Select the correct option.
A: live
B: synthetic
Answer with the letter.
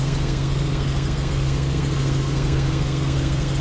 B